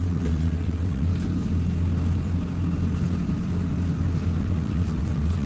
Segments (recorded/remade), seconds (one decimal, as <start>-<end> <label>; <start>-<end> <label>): 0.0-1.1 remade; 1.1-4.4 recorded; 4.4-5.5 remade